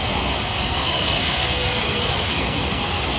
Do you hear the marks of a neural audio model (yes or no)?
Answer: yes